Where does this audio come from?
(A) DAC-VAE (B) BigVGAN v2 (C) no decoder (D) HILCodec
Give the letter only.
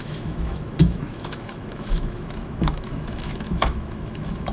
A